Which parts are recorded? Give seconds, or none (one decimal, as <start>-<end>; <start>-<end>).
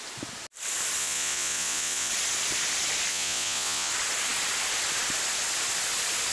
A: 0.0-1.0; 2.1-3.1; 3.9-6.3